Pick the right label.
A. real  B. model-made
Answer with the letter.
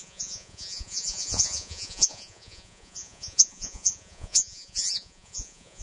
B